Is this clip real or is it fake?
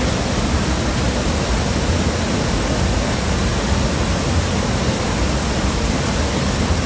real